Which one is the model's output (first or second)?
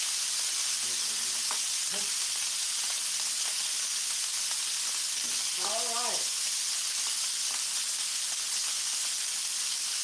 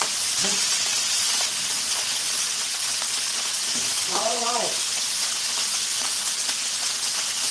second